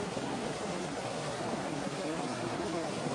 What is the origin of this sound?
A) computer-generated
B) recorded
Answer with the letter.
A